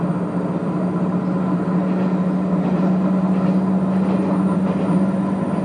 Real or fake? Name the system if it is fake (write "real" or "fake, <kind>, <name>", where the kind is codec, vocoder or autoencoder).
real